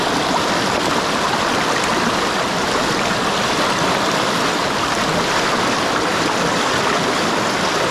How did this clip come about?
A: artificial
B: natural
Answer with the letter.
B